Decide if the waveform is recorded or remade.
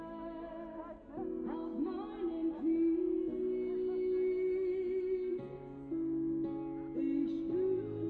recorded